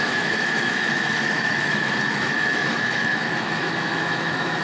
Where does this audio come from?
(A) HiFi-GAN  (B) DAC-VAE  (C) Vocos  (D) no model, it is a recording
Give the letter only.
B